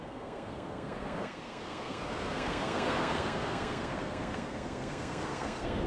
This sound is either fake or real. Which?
fake